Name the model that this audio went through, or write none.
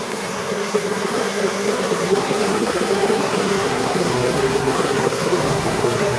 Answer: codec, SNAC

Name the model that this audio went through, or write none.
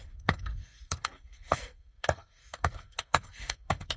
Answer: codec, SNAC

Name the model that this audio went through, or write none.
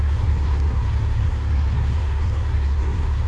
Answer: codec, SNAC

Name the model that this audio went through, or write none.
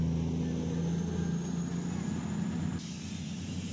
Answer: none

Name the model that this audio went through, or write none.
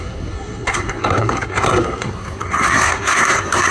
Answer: codec, SNAC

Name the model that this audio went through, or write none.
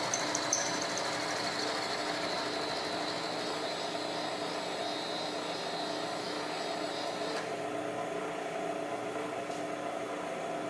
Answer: none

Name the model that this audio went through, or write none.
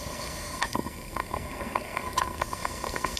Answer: codec, SNAC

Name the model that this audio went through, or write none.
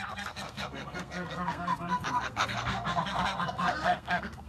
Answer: codec, SNAC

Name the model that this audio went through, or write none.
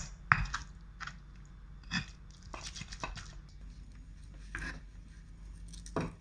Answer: none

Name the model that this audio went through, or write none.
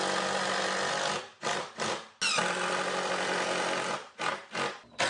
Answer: none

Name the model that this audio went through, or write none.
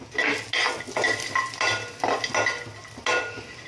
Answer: none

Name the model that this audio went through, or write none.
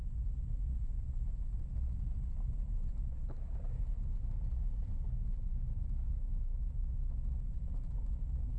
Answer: none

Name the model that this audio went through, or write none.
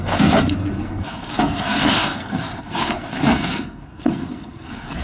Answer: codec, SNAC